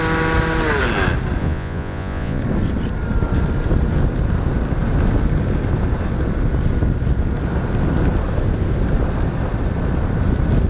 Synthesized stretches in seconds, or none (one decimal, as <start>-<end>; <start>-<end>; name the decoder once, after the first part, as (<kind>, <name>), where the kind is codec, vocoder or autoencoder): 1.4-2.4 (vocoder, Vocos)